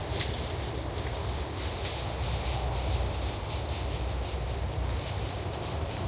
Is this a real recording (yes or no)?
yes